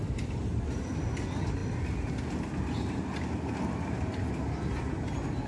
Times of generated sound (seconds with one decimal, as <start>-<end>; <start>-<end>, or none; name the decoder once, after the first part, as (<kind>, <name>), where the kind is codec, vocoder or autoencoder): 0.5-1.1 (vocoder, BigVGAN v2)